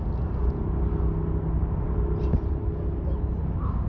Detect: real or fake real